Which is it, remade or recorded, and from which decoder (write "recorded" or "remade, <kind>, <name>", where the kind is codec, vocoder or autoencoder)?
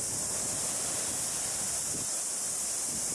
recorded